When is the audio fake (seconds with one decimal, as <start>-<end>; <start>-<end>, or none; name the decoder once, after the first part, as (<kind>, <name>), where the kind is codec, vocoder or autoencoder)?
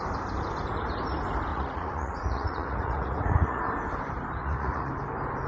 1.5-3.6 (vocoder, Vocos); 4.4-4.9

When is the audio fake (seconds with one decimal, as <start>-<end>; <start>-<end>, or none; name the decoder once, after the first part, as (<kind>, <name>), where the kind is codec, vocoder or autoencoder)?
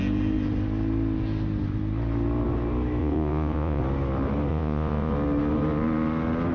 3.0-3.8 (vocoder, Vocos); 4.5-5.1